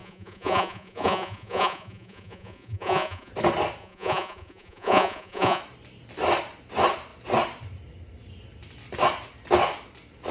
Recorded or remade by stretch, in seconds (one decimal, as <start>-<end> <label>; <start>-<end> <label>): 0.0-3.3 remade; 3.3-3.8 recorded; 3.8-5.6 remade; 5.6-10.3 recorded